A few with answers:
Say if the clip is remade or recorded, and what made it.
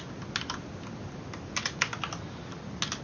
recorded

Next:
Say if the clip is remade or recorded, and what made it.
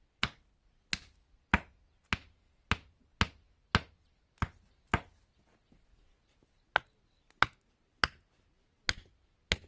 recorded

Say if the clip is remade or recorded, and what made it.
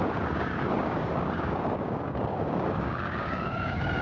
remade, codec, DAC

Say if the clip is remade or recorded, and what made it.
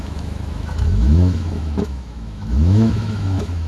remade, autoencoder, DAC-VAE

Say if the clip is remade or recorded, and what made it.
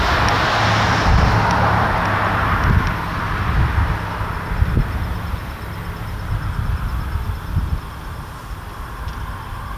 recorded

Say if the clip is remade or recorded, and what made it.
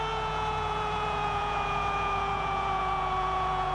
remade, vocoder, Vocos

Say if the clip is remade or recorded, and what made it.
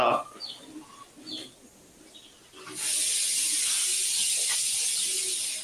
recorded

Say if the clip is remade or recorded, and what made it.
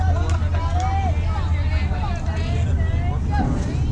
recorded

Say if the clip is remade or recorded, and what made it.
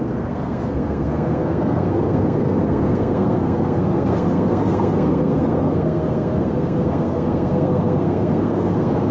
remade, codec, SNAC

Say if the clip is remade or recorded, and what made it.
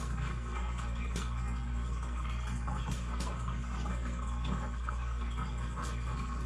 remade, codec, SNAC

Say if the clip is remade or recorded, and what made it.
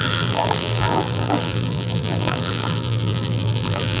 remade, vocoder, BigVGAN v2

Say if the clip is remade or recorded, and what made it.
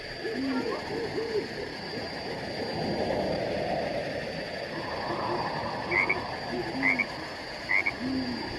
recorded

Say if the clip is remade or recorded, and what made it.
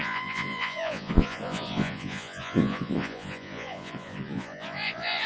remade, vocoder, Vocos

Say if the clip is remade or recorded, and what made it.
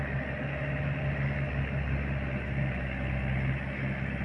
recorded